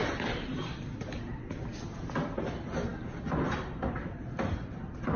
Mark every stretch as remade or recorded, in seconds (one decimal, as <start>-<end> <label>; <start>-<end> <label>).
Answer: 0.0-5.2 recorded